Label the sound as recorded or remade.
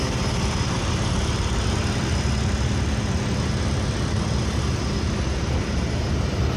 recorded